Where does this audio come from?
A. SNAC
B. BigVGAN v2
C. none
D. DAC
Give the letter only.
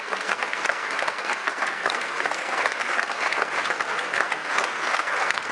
A